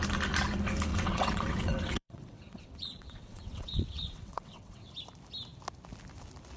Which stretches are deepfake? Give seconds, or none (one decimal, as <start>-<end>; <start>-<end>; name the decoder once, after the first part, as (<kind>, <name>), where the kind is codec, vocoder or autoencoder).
0.9-4.9 (vocoder, WaveNeXt)